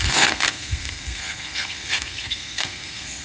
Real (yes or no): no